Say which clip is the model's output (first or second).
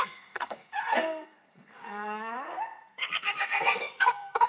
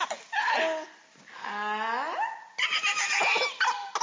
first